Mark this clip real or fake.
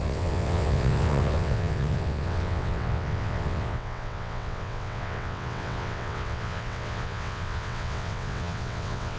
fake